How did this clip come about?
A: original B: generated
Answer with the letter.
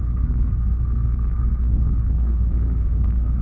B